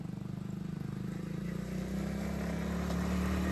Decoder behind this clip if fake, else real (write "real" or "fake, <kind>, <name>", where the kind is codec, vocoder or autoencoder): real